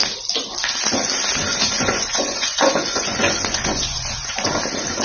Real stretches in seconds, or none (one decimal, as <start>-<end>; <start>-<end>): 0.0-1.5; 4.5-5.0